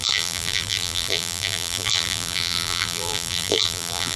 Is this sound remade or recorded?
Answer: remade